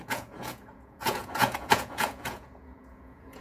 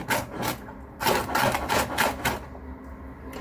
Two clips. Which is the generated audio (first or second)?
first